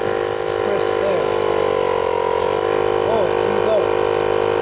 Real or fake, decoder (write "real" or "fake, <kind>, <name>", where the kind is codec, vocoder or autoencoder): real